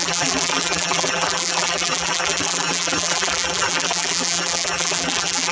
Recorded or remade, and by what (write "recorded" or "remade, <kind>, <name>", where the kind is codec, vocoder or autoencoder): remade, vocoder, BigVGAN v2